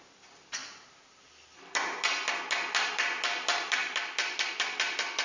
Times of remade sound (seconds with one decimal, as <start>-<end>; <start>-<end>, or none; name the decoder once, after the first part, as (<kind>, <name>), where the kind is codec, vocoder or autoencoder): none